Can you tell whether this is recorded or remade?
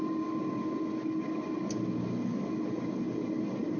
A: recorded